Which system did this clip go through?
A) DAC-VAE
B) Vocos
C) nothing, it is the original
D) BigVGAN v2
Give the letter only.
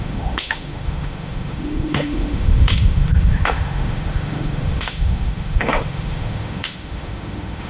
A